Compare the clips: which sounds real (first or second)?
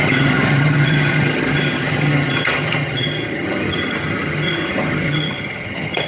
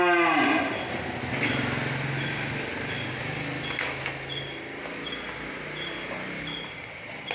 second